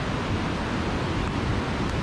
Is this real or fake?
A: real